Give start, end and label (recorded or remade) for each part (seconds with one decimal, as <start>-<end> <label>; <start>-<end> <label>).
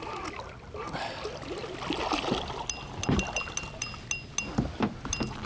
0.0-5.5 recorded